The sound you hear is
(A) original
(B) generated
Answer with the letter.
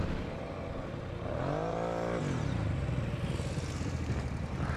A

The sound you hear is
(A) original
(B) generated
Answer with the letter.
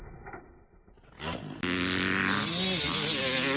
A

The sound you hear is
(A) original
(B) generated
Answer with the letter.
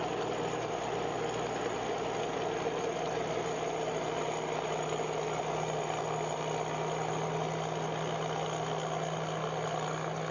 A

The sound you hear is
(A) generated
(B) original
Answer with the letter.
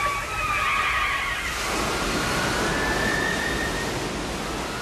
B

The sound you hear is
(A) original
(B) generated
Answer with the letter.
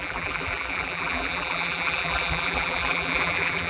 B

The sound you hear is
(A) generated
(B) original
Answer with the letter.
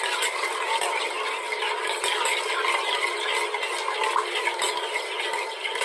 B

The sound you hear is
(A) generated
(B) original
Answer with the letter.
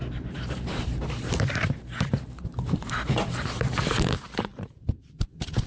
A